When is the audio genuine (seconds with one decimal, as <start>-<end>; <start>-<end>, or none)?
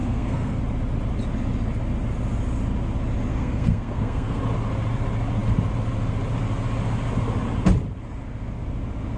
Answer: 0.6-3.3; 4.4-9.2